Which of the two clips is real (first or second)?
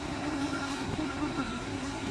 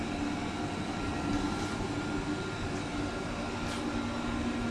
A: second